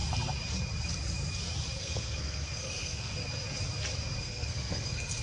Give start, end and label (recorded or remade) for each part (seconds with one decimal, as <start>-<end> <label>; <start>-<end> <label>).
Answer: 0.0-1.8 recorded; 1.8-3.1 remade; 3.1-4.2 recorded; 4.2-5.2 remade